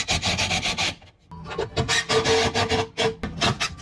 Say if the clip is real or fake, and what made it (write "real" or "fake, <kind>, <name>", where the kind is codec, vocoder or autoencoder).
real